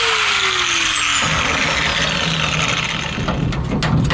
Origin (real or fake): real